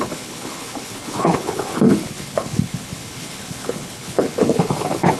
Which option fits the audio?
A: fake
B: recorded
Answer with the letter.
A